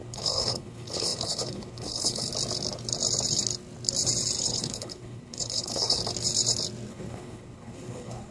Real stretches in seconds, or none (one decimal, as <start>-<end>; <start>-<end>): 2.3-4.4; 6.0-6.9